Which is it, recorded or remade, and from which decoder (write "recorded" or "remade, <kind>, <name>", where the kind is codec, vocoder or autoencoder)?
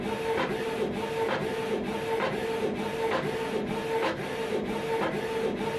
remade, vocoder, BigVGAN v2